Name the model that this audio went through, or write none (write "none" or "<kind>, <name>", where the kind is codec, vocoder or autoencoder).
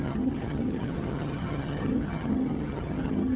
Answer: vocoder, HiFi-GAN